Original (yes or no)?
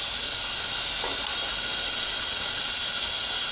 yes